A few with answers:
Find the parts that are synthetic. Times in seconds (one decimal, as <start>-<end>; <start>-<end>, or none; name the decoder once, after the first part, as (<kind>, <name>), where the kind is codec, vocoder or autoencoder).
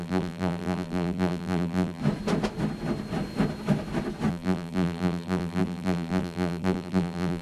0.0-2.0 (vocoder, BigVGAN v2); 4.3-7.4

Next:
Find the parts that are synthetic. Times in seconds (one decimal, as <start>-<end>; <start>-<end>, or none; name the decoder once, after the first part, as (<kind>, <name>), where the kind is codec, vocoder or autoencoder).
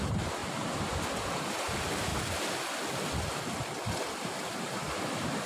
2.1-5.5 (vocoder, BigVGAN v2)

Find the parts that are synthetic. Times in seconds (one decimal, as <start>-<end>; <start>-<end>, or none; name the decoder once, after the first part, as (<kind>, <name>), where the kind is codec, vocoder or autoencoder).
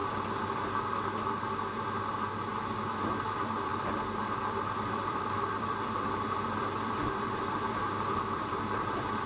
3.0-9.3 (vocoder, BigVGAN v2)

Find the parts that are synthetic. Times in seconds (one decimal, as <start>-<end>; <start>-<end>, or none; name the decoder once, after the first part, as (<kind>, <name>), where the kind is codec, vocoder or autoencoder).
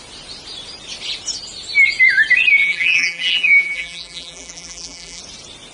2.6-5.2 (vocoder, BigVGAN v2)